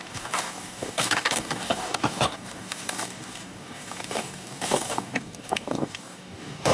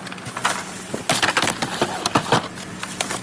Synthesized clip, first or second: first